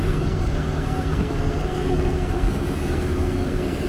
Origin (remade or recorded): remade